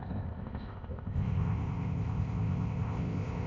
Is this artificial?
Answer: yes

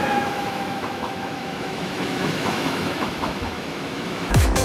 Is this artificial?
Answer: yes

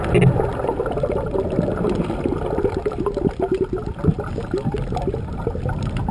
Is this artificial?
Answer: no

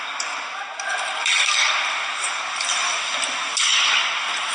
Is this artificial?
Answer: no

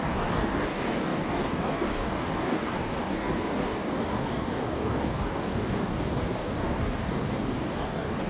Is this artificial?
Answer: yes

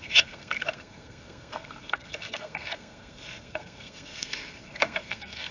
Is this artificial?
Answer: yes